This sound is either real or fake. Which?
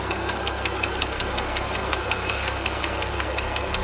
fake